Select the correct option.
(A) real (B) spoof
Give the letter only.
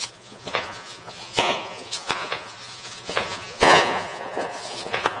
B